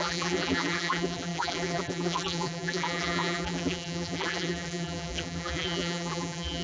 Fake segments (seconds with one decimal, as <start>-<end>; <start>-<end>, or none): 0.0-6.6